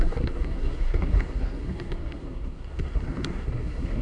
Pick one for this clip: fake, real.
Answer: fake